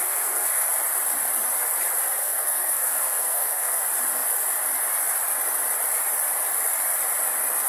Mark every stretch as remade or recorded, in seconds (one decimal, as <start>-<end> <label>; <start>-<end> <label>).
0.0-0.7 remade; 0.7-2.2 recorded; 2.2-3.8 remade; 3.8-7.7 recorded